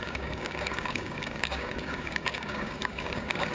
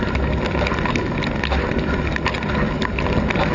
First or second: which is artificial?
first